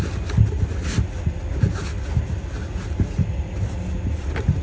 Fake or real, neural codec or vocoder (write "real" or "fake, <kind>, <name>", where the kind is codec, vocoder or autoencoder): real